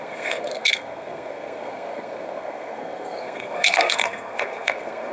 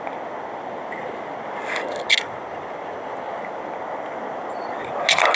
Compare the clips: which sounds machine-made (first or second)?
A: first